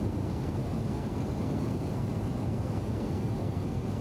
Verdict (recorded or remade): remade